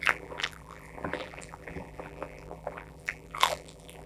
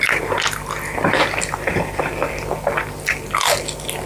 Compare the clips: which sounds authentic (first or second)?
second